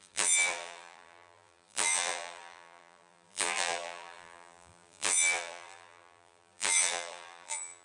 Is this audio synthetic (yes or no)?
yes